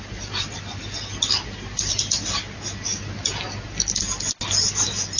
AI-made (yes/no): no